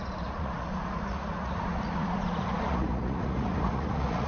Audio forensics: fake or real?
fake